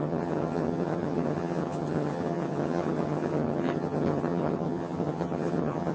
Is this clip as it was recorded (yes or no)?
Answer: no